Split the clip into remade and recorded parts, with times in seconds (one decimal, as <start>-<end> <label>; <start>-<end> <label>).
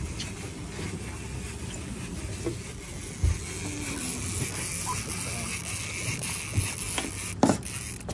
0.0-8.1 recorded